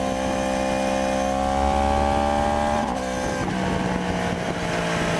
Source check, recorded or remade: recorded